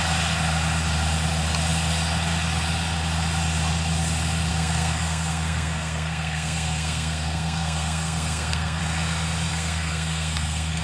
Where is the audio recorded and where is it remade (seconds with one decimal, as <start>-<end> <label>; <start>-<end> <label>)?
0.0-4.5 recorded; 4.5-8.8 remade; 8.8-9.5 recorded; 9.5-10.8 remade